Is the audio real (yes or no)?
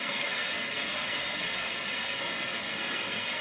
no